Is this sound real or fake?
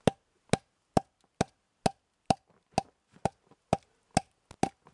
real